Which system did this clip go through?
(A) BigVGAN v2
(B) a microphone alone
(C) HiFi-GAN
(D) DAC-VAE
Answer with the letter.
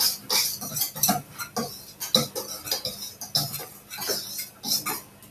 B